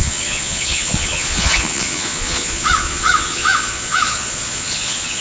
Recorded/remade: remade